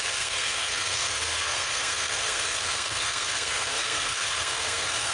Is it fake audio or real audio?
fake